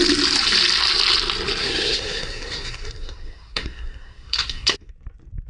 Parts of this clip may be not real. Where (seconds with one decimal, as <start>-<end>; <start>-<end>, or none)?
1.6-4.9